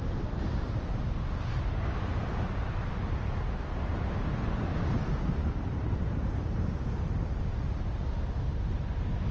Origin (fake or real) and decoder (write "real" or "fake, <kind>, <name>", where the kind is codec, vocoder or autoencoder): real